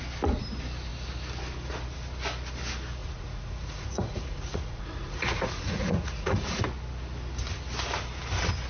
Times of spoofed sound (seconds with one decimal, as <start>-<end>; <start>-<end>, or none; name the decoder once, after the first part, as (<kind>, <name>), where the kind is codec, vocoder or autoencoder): 3.0-6.6 (vocoder, Vocos)